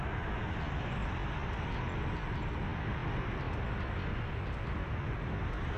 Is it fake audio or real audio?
real